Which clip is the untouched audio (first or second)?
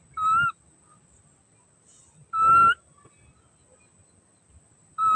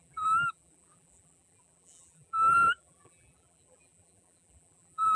first